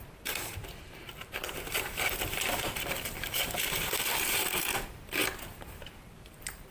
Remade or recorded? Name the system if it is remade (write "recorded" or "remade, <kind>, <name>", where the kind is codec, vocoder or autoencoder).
remade, vocoder, BigVGAN v2